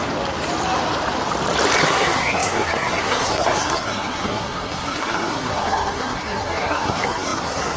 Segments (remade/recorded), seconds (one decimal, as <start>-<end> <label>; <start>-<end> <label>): 0.0-1.8 recorded; 1.8-7.8 remade

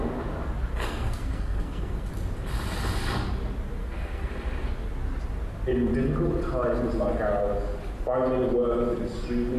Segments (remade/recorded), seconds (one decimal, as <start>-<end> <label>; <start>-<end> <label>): 0.0-0.7 recorded; 0.7-2.1 remade; 2.1-3.8 recorded; 3.8-4.3 remade; 4.3-9.6 recorded